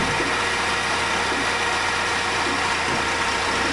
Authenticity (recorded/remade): recorded